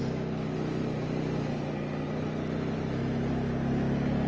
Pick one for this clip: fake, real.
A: real